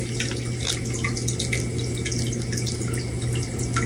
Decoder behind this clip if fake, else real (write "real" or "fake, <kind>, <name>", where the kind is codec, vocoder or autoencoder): real